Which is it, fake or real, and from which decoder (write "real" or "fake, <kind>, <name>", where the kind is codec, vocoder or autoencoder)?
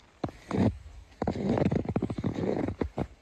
fake, codec, DAC